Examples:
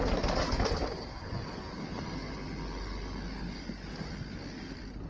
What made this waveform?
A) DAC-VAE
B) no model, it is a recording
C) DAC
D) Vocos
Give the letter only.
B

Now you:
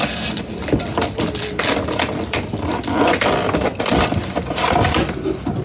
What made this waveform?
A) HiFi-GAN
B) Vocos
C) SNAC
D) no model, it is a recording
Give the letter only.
D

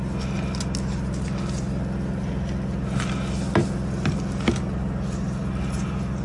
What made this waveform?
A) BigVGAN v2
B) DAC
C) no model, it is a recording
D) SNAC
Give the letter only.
C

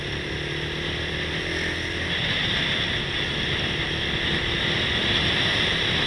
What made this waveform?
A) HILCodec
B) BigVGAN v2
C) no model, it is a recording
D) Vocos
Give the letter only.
C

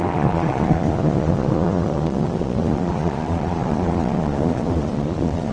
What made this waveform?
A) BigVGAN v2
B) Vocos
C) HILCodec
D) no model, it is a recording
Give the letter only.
B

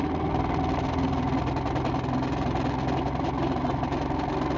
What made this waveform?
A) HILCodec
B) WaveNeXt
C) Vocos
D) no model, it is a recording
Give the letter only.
D